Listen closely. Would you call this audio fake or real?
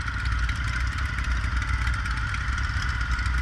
real